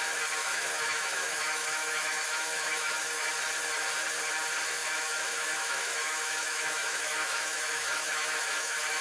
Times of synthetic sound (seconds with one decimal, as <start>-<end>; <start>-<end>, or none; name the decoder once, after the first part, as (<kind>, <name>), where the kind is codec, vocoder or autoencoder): 0.4-3.3 (autoencoder, DAC-VAE); 4.8-9.0